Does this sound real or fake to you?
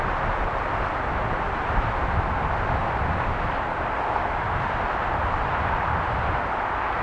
real